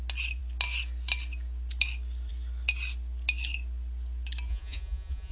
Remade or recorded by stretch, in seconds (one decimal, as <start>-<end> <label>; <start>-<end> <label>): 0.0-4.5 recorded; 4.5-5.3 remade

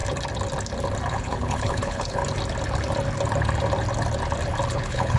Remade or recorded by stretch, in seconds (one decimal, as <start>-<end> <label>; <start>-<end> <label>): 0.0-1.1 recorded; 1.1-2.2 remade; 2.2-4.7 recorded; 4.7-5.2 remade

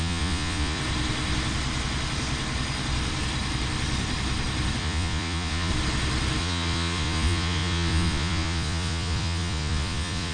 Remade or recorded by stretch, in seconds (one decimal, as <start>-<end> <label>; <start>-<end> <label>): 0.0-0.8 remade; 0.8-4.8 recorded; 4.8-5.7 remade; 5.7-6.4 recorded; 6.4-10.3 remade

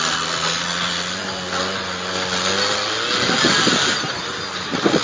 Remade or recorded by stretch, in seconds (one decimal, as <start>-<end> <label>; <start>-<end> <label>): 0.0-5.0 recorded